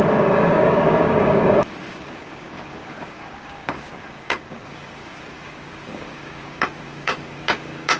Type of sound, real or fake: fake